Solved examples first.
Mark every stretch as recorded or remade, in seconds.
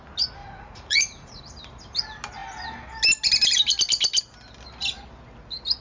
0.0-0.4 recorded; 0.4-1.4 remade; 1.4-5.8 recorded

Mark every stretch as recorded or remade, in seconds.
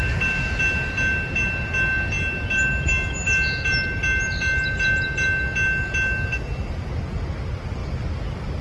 0.0-8.6 recorded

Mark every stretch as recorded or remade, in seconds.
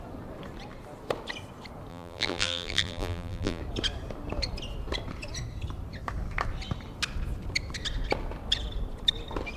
0.0-1.9 recorded; 1.9-3.6 remade; 3.6-9.6 recorded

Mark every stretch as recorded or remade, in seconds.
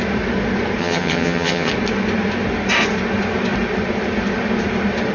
0.0-0.8 recorded; 0.8-1.7 remade; 1.7-5.1 recorded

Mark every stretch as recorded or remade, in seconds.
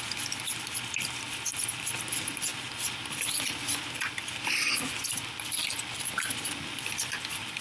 0.0-7.6 recorded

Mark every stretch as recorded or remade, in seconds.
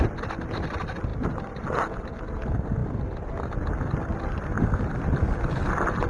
0.0-6.1 recorded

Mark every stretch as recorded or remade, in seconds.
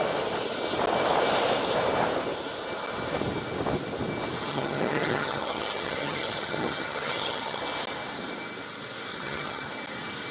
0.0-4.5 recorded; 4.5-7.6 remade; 7.6-9.1 recorded; 9.1-9.7 remade; 9.7-10.3 recorded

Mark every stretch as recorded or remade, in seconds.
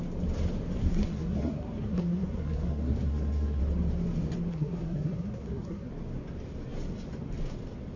0.0-0.8 recorded; 0.8-3.6 remade; 3.6-4.5 recorded; 4.5-5.9 remade; 5.9-8.0 recorded